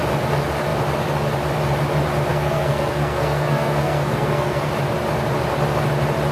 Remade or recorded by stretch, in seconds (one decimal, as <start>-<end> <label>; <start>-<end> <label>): 0.0-2.3 recorded; 2.3-4.7 remade; 4.7-6.3 recorded